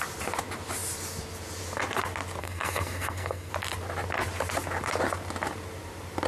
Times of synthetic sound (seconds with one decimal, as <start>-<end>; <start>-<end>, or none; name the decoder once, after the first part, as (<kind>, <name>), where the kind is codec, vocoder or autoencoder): 2.4-3.5 (codec, SNAC)